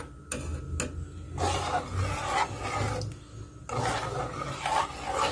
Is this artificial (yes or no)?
no